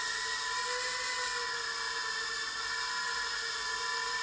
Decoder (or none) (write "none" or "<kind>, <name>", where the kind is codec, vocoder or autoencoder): none